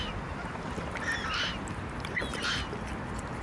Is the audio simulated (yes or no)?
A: no